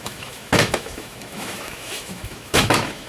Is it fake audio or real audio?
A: fake